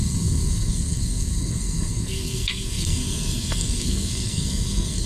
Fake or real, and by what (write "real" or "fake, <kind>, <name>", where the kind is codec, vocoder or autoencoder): fake, codec, SNAC